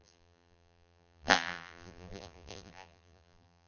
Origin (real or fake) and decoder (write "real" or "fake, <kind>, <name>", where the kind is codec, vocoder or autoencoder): fake, vocoder, BigVGAN v2